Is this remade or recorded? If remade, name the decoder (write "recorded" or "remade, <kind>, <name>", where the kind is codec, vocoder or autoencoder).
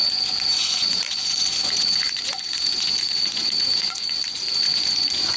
remade, vocoder, Vocos